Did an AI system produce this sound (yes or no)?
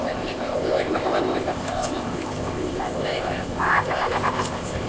yes